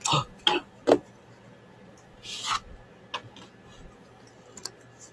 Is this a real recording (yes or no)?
yes